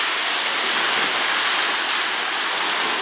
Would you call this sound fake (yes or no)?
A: no